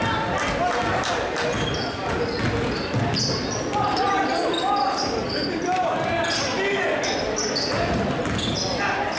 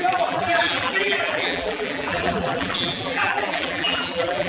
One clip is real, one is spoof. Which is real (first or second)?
first